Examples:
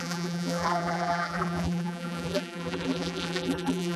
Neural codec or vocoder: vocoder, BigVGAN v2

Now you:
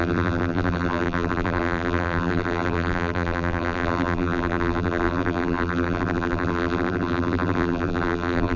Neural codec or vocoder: vocoder, BigVGAN v2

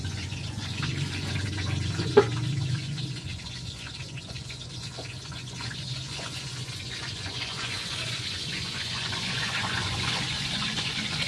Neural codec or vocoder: vocoder, Vocos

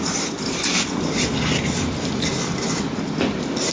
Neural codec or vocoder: none